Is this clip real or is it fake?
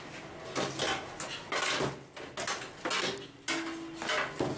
real